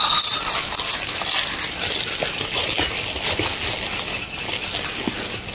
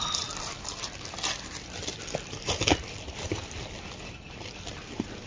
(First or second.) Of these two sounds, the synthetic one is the second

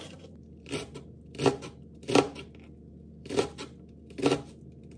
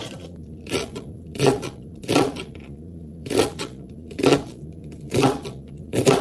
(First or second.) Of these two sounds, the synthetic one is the second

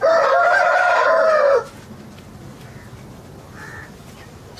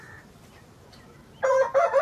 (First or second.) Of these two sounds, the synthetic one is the second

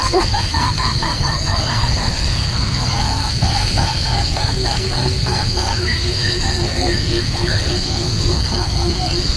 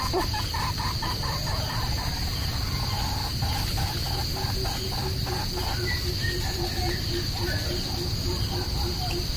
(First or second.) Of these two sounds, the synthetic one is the first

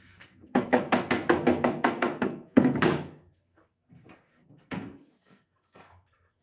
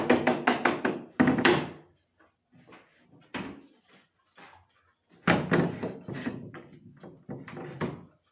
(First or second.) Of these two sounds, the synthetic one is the first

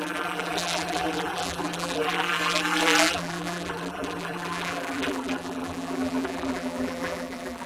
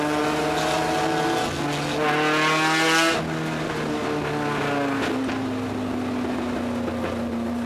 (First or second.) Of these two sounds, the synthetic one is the first